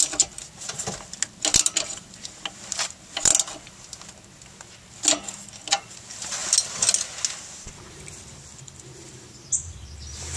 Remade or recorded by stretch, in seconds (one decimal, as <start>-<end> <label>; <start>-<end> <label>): 0.0-10.4 recorded